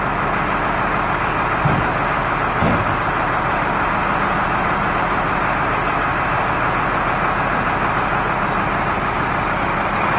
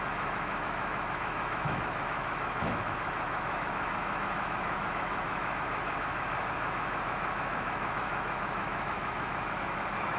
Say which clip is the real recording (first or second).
first